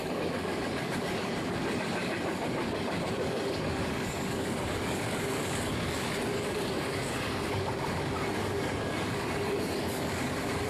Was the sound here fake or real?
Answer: fake